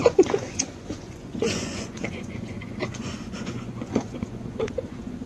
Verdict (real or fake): fake